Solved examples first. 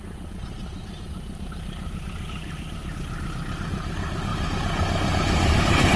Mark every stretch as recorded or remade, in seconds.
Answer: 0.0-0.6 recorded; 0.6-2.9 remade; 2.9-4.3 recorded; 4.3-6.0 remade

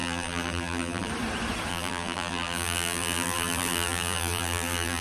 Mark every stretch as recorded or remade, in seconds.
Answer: 0.0-1.1 remade; 1.1-1.7 recorded; 1.7-5.0 remade

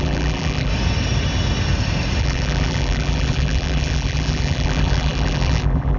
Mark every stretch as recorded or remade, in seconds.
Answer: 0.0-0.7 remade; 0.7-2.2 recorded; 2.2-6.0 remade

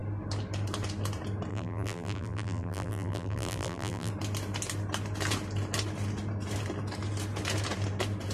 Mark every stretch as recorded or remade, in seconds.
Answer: 0.0-1.5 recorded; 1.5-4.1 remade; 4.1-8.3 recorded

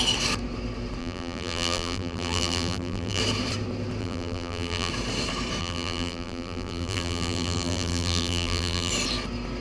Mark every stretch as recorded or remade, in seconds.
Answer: 0.0-1.0 recorded; 1.0-3.2 remade; 3.2-4.0 recorded; 4.0-4.9 remade; 4.9-5.6 recorded; 5.6-8.9 remade; 8.9-9.6 recorded

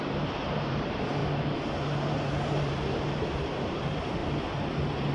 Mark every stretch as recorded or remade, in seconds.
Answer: 0.0-1.2 remade; 1.2-2.1 recorded; 2.1-4.2 remade; 4.2-5.1 recorded

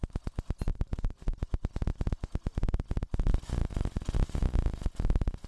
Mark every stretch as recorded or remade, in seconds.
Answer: 0.0-0.7 recorded; 0.7-1.4 remade; 1.4-5.5 recorded

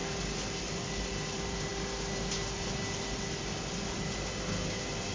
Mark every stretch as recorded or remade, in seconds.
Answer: 0.0-0.6 recorded; 0.6-1.7 remade; 1.7-5.1 recorded